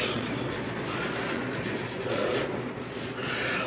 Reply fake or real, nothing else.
fake